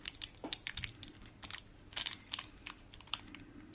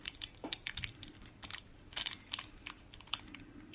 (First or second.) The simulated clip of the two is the second